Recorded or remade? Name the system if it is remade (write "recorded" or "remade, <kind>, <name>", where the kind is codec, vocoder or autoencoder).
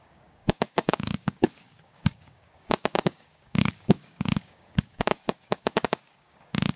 remade, codec, DAC